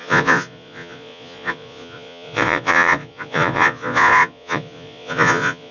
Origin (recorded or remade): remade